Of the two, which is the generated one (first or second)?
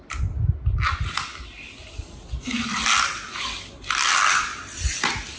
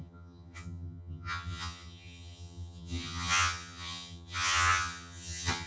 second